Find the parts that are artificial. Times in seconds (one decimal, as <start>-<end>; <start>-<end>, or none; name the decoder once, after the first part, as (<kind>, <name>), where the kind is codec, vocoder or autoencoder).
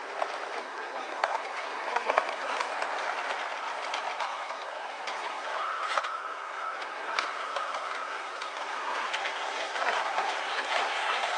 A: 0.6-2.7 (codec, SNAC); 4.2-11.4